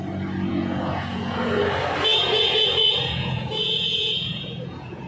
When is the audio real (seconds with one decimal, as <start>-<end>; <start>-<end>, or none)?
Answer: 0.0-0.5; 1.6-2.1